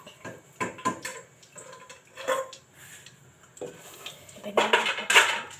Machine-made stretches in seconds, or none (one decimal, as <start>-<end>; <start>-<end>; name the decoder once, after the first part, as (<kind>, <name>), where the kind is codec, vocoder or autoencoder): none